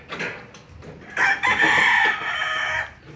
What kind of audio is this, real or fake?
real